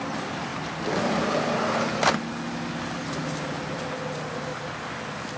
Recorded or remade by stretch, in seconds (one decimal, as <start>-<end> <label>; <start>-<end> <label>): 0.0-5.4 recorded

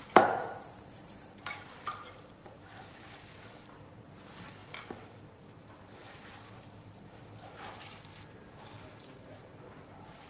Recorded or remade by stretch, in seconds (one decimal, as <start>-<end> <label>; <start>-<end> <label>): 0.0-8.1 remade; 8.1-8.8 recorded; 8.8-10.3 remade

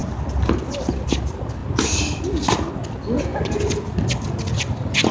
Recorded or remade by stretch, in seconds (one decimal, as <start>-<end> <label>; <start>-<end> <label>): 0.0-5.1 recorded

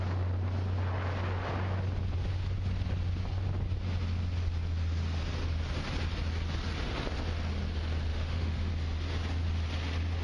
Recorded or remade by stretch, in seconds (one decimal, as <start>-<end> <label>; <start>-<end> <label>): 0.0-8.1 recorded; 8.1-8.7 remade; 8.7-10.2 recorded

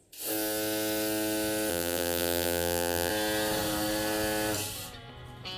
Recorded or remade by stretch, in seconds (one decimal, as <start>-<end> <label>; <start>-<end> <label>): 0.0-1.7 recorded; 1.7-3.1 remade; 3.1-5.6 recorded

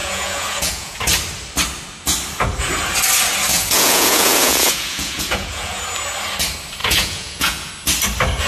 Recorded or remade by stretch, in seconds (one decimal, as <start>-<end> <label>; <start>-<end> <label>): 0.0-1.0 remade; 1.0-3.5 recorded; 3.5-5.8 remade; 5.8-6.8 recorded; 6.8-7.7 remade; 7.7-8.5 recorded

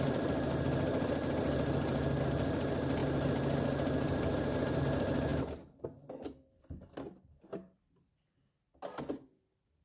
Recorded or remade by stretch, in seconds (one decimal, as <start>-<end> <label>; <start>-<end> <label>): 0.0-9.8 recorded

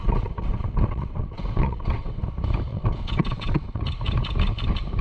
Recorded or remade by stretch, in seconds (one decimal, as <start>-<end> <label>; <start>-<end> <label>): 0.0-2.2 remade; 2.2-2.7 recorded; 2.7-3.8 remade; 3.8-5.0 recorded